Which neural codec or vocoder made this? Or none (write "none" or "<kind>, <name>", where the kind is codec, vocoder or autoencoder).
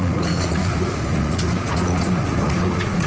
vocoder, Vocos